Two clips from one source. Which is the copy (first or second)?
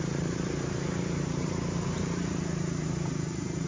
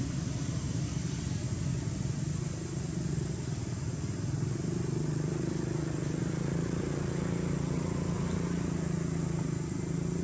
first